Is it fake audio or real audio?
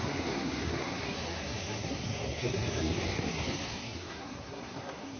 fake